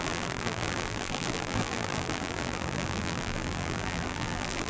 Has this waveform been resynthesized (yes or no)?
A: yes